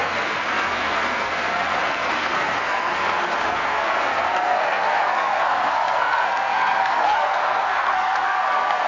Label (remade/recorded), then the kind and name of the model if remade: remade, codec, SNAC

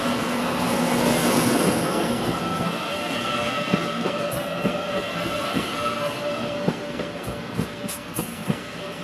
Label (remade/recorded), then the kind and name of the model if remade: remade, codec, SNAC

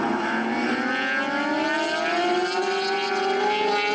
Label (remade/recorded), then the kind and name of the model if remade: recorded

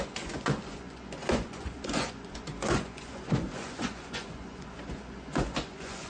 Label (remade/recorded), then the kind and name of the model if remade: remade, vocoder, Vocos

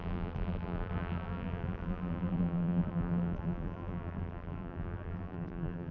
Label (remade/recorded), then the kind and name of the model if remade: remade, vocoder, BigVGAN v2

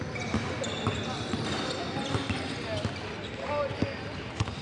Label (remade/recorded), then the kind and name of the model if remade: recorded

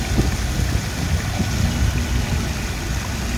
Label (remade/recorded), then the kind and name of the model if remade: recorded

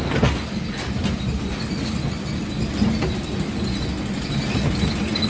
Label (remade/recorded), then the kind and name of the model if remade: recorded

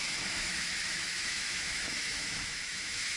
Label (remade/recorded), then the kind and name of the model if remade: remade, autoencoder, DAC-VAE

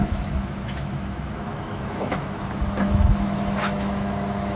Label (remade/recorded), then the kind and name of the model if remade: remade, autoencoder, DAC-VAE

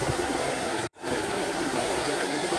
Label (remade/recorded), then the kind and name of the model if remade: remade, codec, SNAC